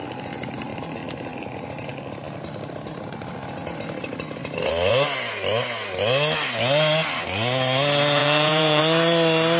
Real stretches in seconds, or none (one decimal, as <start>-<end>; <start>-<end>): 0.0-8.2; 8.8-9.6